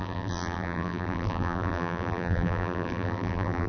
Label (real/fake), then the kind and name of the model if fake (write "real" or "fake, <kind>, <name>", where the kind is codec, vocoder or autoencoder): fake, vocoder, BigVGAN v2